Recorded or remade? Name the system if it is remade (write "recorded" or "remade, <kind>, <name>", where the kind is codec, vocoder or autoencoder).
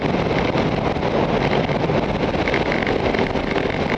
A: recorded